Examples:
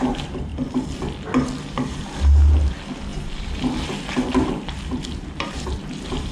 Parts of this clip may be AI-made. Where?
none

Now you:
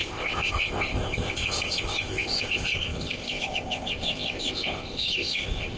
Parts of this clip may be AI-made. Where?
0.0-5.8 (codec, ZipCodec)

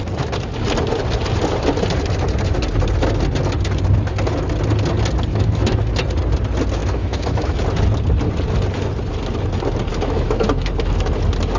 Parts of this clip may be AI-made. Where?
5.3-5.9 (autoencoder, DAC-VAE); 6.8-7.6; 9.9-10.7

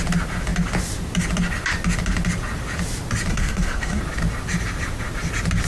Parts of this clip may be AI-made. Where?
3.3-4.0 (codec, SNAC)

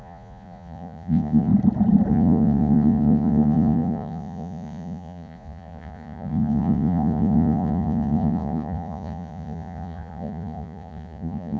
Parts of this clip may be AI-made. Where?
0.0-1.5 (vocoder, Vocos); 2.1-11.6

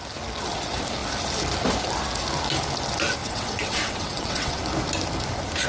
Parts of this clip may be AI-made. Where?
3.2-4.6 (vocoder, WaveNeXt)